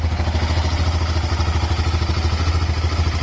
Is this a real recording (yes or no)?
yes